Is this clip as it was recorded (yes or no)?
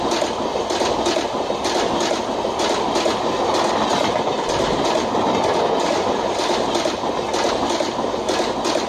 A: yes